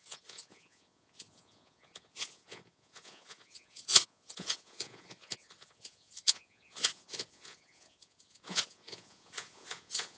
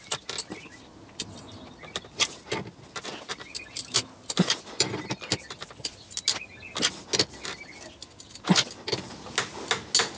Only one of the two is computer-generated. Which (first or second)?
first